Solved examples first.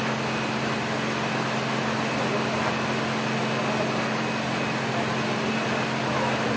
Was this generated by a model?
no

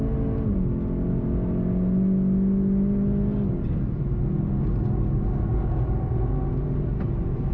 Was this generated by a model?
no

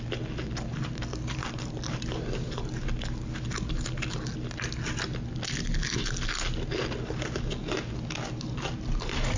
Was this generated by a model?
no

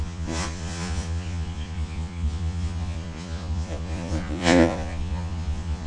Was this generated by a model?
yes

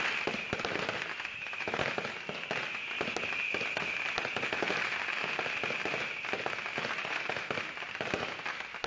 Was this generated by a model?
no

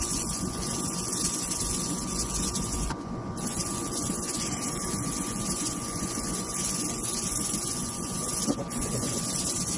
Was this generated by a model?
yes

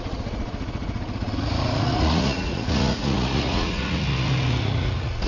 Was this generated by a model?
yes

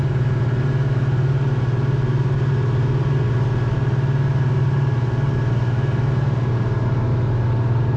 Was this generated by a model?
no